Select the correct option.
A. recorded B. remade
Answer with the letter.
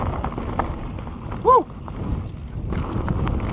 A